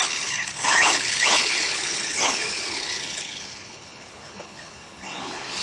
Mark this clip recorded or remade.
remade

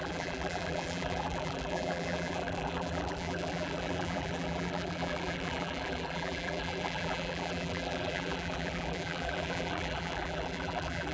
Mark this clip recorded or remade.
remade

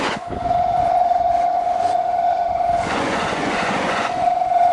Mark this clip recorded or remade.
remade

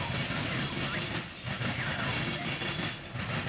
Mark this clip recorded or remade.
recorded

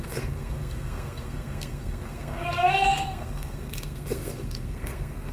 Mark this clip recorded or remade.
remade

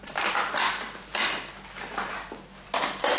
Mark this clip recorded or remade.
recorded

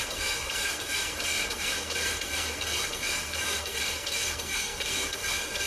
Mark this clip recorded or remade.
remade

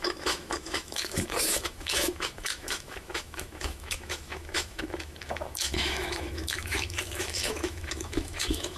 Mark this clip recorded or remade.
remade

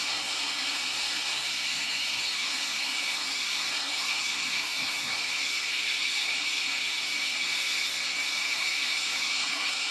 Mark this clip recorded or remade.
remade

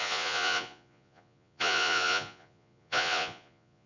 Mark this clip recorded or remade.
remade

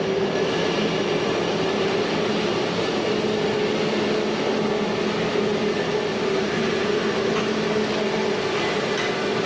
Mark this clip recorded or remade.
recorded